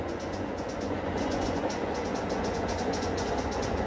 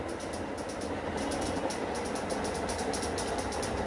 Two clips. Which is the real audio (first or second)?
second